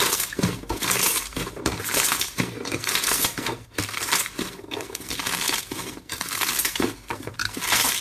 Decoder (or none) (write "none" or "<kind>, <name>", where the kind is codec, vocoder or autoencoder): codec, SNAC